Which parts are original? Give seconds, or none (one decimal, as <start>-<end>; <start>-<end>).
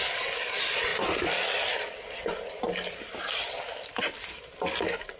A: 0.0-5.2